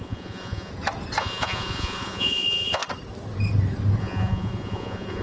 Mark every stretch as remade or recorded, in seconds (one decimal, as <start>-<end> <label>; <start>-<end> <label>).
0.0-0.7 remade; 0.7-1.2 recorded; 1.2-2.8 remade; 2.8-4.0 recorded; 4.0-5.2 remade